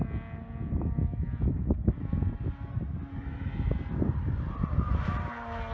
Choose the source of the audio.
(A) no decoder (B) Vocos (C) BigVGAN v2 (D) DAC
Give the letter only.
A